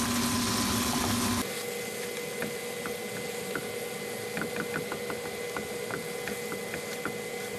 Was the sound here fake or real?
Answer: real